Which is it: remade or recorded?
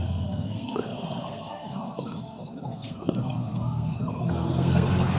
remade